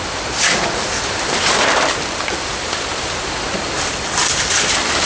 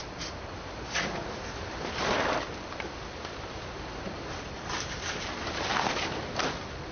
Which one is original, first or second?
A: second